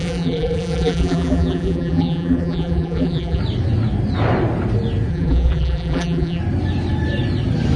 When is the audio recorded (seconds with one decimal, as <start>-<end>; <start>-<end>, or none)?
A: 3.4-5.1; 6.4-7.8